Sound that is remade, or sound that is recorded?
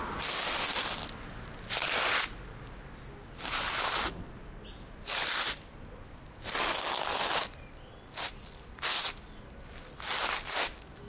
recorded